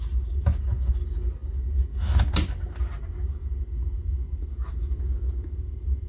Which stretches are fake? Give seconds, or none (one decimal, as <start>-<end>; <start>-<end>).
none